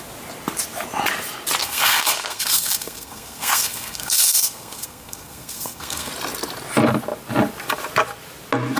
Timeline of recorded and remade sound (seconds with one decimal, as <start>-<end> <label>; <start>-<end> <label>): 0.0-1.6 recorded; 1.6-6.1 remade; 6.1-8.8 recorded